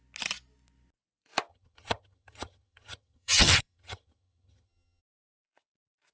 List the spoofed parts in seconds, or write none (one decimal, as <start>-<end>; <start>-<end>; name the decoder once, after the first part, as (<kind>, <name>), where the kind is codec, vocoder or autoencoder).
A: 1.5-5.0 (vocoder, HiFi-GAN)